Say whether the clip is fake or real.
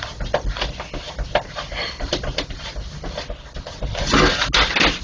real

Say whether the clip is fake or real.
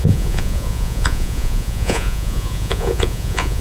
fake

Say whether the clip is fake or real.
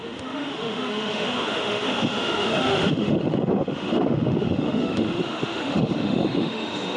fake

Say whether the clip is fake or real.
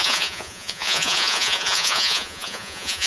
fake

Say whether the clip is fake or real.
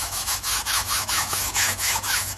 fake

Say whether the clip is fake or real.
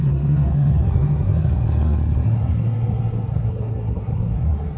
fake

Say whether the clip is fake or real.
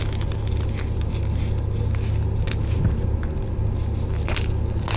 real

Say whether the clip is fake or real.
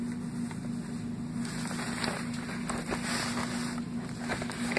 real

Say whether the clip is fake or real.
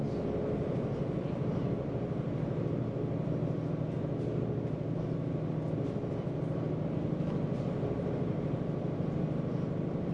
real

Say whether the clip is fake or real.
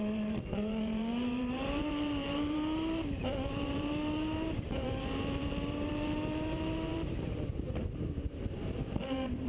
fake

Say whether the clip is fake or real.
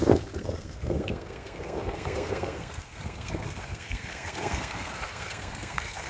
fake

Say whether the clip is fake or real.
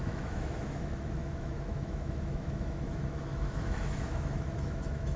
fake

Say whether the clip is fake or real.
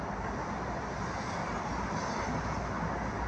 real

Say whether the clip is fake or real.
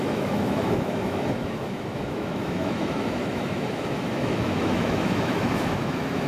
fake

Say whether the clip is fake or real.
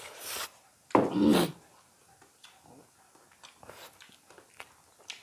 real